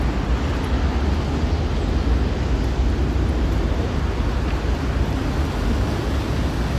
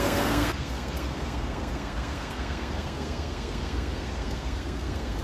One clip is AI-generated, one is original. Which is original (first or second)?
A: first